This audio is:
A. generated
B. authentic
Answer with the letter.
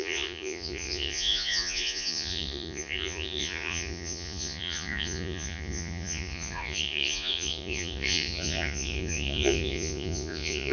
A